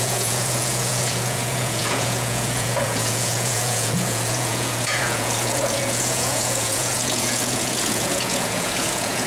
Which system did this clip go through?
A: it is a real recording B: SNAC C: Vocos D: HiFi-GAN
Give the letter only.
C